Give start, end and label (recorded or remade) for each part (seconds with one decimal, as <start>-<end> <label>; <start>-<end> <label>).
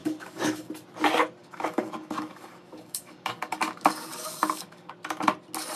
0.0-0.7 remade; 0.7-1.4 recorded; 1.4-4.9 remade; 4.9-5.8 recorded